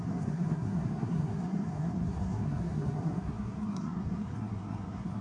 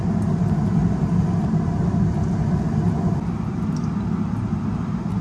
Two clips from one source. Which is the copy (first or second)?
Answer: first